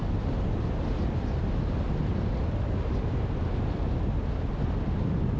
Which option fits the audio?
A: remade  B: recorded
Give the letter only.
B